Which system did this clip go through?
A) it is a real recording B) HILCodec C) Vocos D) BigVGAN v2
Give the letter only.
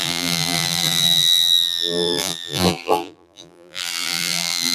D